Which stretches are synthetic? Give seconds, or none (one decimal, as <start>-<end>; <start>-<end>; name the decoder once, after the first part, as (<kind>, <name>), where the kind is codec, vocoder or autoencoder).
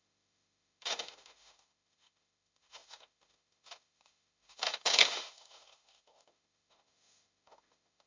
0.0-8.1 (autoencoder, DAC-VAE)